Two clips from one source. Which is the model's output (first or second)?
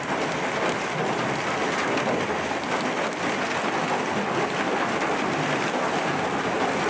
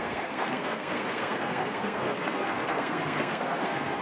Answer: second